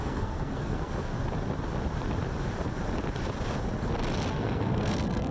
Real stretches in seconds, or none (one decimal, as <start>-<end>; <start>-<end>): 1.1-4.3